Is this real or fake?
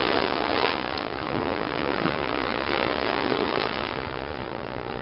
fake